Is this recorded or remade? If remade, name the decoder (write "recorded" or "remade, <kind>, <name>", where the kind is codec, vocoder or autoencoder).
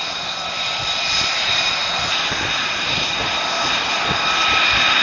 recorded